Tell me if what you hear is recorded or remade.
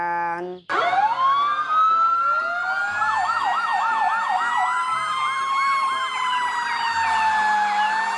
recorded